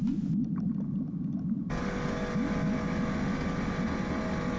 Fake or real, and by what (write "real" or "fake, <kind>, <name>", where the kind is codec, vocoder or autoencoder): real